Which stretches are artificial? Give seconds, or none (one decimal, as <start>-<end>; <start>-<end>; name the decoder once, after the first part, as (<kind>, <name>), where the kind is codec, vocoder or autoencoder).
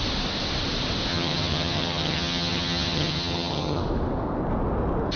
1.1-3.8 (vocoder, HiFi-GAN)